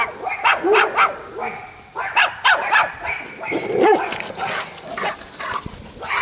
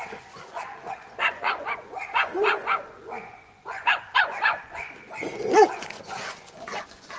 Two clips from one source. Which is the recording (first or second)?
first